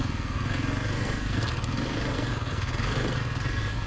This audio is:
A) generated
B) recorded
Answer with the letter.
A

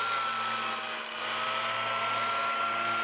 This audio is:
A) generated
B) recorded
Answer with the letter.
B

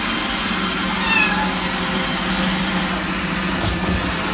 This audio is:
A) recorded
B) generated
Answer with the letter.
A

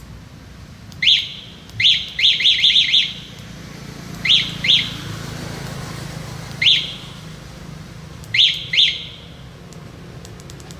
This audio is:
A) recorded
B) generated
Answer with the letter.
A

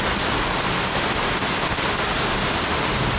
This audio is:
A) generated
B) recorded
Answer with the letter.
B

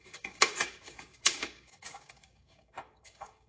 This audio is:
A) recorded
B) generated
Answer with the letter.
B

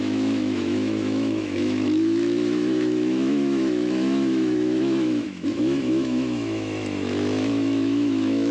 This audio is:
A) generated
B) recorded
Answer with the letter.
A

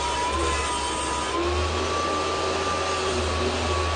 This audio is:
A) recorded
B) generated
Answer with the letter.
A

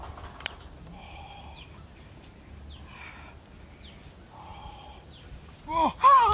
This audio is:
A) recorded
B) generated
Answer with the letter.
A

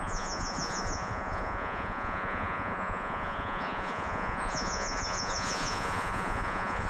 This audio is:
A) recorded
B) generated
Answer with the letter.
B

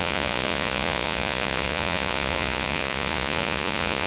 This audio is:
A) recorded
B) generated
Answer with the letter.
B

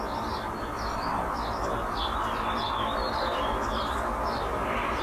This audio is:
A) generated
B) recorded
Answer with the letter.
B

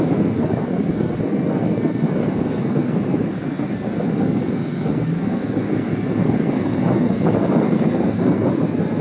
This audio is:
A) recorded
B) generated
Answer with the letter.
B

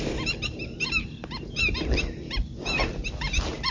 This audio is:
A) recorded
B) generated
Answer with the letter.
A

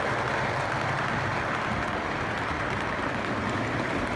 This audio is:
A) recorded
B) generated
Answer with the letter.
A